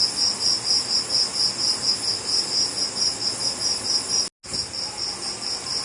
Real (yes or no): yes